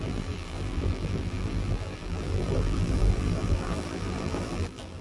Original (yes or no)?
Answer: no